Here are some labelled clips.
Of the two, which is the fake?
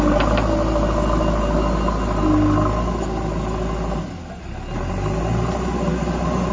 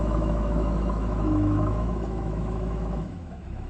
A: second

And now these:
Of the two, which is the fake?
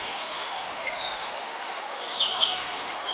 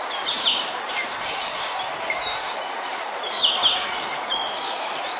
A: first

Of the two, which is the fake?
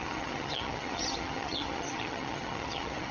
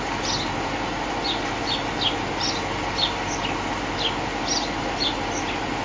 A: first